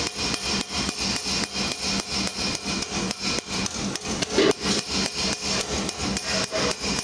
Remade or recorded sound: recorded